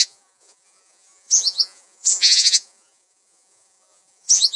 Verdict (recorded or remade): remade